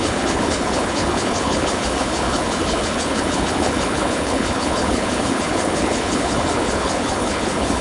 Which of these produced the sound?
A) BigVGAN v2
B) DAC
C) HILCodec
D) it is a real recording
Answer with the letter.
C